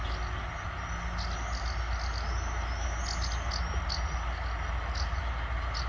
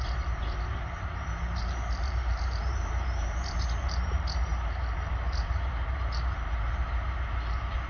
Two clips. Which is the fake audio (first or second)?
second